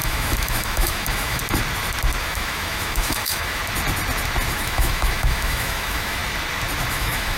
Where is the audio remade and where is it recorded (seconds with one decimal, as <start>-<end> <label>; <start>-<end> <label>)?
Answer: 0.0-1.4 remade; 1.4-2.2 recorded; 2.2-3.6 remade; 3.6-4.5 recorded; 4.5-6.2 remade; 6.2-6.9 recorded; 6.9-7.4 remade